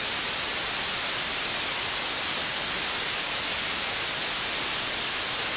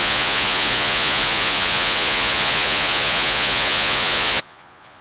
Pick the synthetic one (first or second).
second